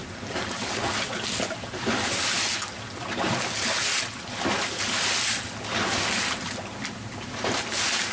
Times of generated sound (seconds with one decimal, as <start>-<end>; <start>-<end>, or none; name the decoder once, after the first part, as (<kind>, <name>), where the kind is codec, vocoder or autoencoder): none